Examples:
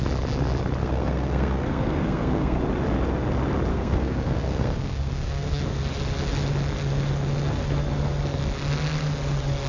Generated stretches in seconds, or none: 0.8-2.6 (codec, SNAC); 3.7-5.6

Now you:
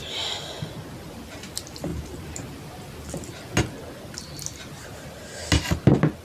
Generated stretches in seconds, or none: none

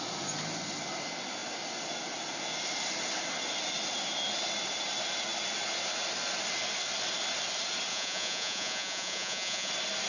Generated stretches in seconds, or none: 7.9-9.7 (vocoder, Vocos)

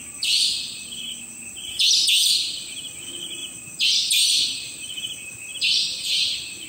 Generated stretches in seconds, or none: 3.4-6.1 (vocoder, BigVGAN v2)

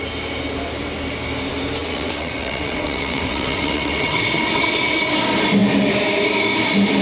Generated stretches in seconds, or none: 1.8-5.0 (vocoder, WaveNeXt)